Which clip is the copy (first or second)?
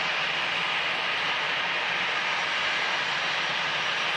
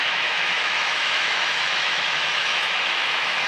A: second